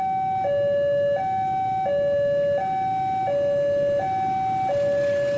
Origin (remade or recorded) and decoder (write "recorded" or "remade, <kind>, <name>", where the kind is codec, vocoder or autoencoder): recorded